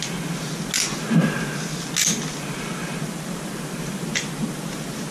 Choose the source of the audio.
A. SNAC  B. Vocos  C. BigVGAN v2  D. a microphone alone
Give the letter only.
D